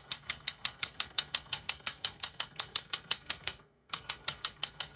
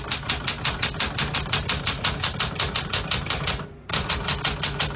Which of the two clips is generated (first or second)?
first